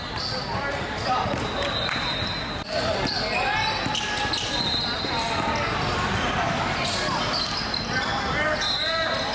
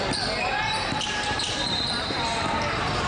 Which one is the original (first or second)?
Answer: first